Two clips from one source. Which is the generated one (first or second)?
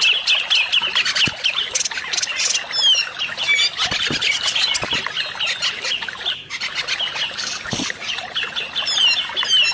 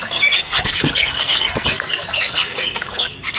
second